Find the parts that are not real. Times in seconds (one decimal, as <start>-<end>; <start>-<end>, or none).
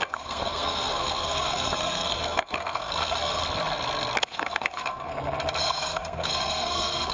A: 0.0-3.4; 4.2-5.1; 5.6-7.1